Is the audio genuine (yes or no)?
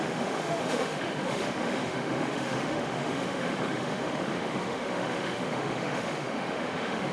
no